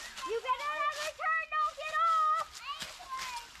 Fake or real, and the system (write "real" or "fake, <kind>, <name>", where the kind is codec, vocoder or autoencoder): real